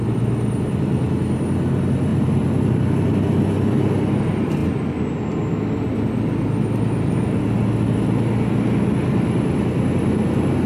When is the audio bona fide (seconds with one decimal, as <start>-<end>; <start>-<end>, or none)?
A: 0.0-2.1; 2.9-10.7